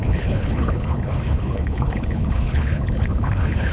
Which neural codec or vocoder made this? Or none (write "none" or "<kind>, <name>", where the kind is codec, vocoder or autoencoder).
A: codec, HILCodec